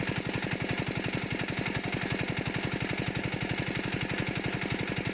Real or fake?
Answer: real